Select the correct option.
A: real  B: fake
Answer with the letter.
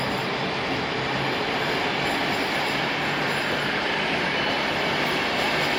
A